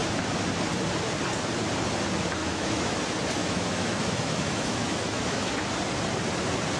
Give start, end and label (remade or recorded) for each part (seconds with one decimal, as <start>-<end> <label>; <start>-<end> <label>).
0.0-2.4 recorded; 2.4-3.0 remade; 3.0-3.4 recorded; 3.4-5.5 remade; 5.5-6.8 recorded